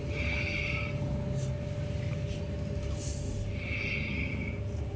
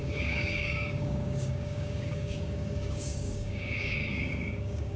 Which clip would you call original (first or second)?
first